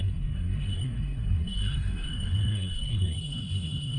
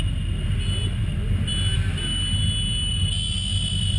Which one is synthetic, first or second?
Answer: first